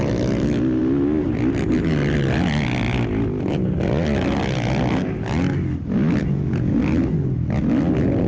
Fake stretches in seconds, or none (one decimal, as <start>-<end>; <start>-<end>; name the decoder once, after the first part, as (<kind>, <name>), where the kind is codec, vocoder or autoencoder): 6.2-6.8 (vocoder, Vocos)